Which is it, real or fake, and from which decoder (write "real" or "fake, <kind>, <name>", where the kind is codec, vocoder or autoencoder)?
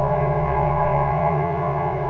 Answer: fake, vocoder, WaveNeXt